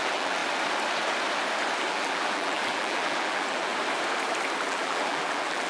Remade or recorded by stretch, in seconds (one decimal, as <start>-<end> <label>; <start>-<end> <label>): 0.0-0.4 remade; 0.4-1.9 recorded; 1.9-3.7 remade; 3.7-4.6 recorded; 4.6-5.7 remade